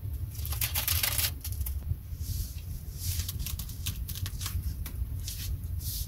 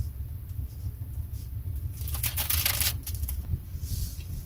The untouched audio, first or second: second